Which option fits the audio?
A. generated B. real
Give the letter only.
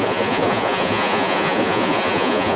A